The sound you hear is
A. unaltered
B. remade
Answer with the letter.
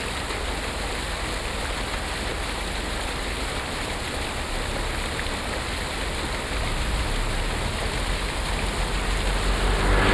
A